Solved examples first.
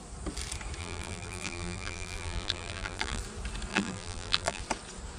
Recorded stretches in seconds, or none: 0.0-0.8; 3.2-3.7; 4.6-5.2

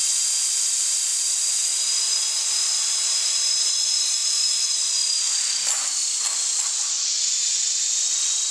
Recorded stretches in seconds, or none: 0.0-4.2; 5.2-8.5

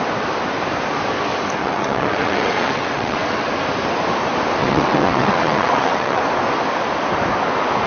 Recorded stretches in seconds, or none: 0.0-1.6; 3.5-4.6; 6.2-7.9

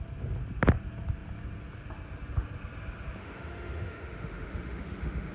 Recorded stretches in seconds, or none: 0.0-3.2

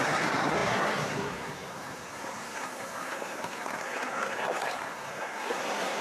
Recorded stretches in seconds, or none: none

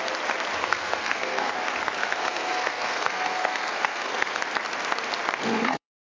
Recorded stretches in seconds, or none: 0.0-0.6; 1.5-2.0; 4.4-5.4

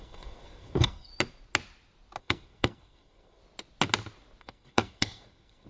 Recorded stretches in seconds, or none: 1.1-2.2; 3.4-4.4